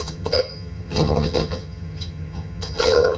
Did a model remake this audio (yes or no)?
yes